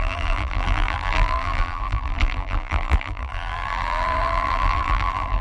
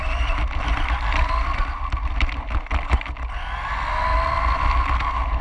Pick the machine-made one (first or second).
first